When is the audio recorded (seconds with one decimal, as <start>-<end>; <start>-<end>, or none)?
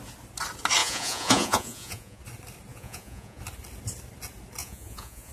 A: 0.0-0.8; 2.2-2.7; 3.4-4.6